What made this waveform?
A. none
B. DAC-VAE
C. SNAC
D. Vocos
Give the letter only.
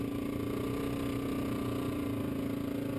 A